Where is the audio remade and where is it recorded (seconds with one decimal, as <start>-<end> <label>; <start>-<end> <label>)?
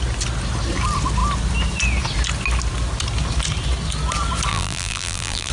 0.0-4.5 recorded; 4.5-5.5 remade